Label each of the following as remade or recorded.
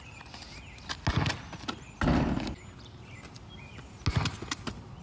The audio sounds recorded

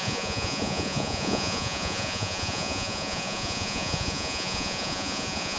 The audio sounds remade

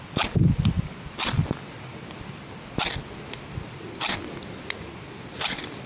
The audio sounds recorded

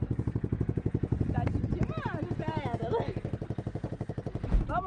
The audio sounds recorded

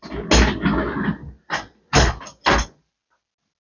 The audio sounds recorded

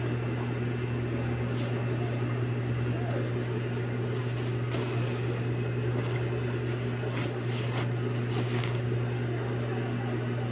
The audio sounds recorded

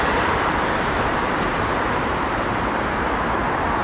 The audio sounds recorded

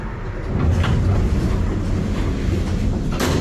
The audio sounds recorded